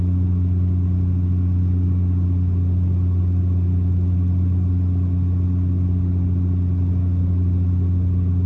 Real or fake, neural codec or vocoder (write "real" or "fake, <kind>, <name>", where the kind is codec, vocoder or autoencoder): real